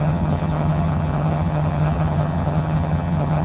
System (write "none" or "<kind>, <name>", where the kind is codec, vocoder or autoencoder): vocoder, HiFi-GAN